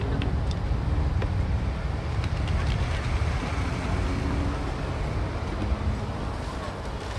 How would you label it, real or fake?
real